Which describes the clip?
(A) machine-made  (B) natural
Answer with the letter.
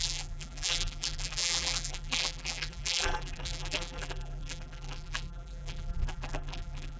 A